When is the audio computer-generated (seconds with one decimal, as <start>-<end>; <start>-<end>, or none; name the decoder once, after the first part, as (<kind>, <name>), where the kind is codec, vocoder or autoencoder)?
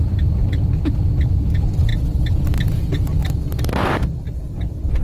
none